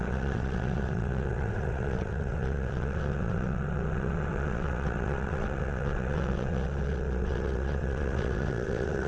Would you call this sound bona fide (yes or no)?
no